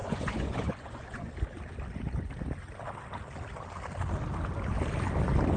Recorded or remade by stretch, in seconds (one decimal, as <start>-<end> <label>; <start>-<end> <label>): 0.0-1.3 remade; 1.3-5.6 recorded